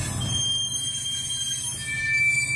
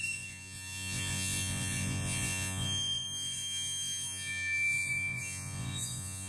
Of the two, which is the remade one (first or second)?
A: second